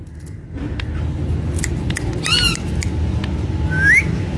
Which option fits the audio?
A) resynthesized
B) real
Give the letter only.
B